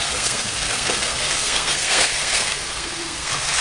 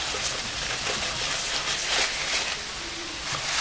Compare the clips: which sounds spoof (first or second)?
first